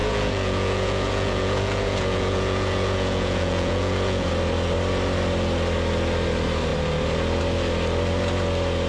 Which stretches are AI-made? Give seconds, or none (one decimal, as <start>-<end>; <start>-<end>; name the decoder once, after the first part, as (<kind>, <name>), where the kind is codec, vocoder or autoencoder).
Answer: 0.0-4.3 (vocoder, Vocos)